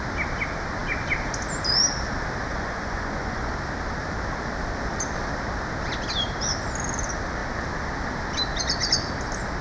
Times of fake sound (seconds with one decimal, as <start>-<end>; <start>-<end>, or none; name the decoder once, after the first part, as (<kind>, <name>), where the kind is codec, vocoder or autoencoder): 2.5-3.5 (vocoder, Vocos)